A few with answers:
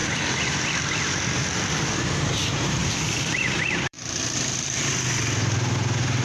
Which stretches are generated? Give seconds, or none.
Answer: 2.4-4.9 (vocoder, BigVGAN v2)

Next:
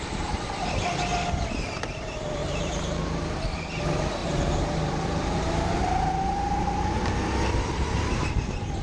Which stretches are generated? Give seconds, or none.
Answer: 2.4-3.6 (vocoder, BigVGAN v2); 4.2-6.5

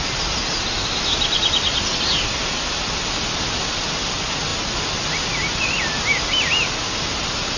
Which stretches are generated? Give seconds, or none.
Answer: none

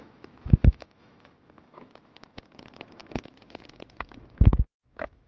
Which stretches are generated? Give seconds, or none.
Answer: 0.0-5.3 (autoencoder, DAC-VAE)

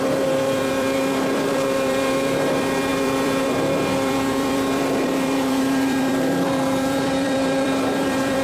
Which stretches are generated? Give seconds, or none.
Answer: 0.0-8.4 (vocoder, BigVGAN v2)

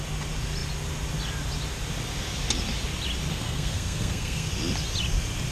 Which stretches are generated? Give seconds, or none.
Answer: 3.3-4.5 (codec, SNAC)

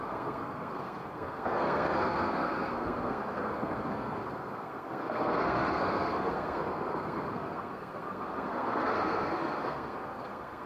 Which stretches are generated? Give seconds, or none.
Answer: 0.0-10.7 (codec, SNAC)